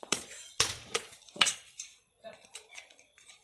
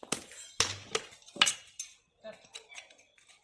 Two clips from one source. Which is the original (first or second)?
second